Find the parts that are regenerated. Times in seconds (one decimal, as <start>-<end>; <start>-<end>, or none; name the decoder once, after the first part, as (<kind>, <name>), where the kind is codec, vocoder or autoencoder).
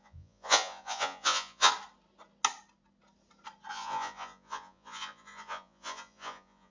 0.0-1.7 (vocoder, Vocos); 3.7-6.7